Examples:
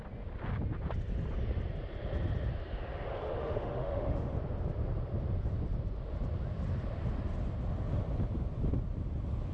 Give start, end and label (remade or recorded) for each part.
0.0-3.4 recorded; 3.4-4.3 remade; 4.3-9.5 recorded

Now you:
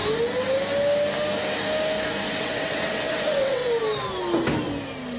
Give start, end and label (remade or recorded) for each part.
0.0-2.4 recorded; 2.4-3.6 remade; 3.6-5.2 recorded

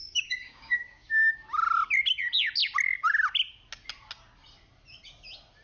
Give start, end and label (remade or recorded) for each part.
0.0-1.1 remade; 1.1-5.6 recorded

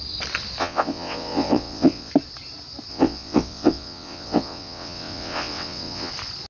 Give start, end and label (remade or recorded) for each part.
0.0-0.6 recorded; 0.6-2.1 remade; 2.1-2.9 recorded; 2.9-6.1 remade; 6.1-6.5 recorded